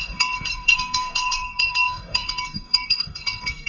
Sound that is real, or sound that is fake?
fake